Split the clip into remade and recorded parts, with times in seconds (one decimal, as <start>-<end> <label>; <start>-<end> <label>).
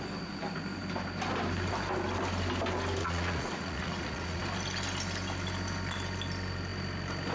0.0-3.0 recorded; 3.0-4.4 remade; 4.4-7.3 recorded